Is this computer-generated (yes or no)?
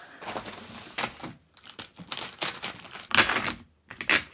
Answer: no